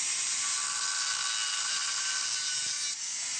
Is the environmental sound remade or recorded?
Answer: recorded